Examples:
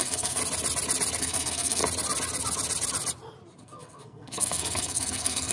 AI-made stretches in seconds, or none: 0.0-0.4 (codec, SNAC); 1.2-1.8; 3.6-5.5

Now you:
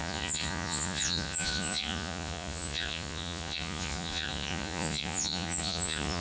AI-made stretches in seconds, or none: 0.0-6.2 (vocoder, Vocos)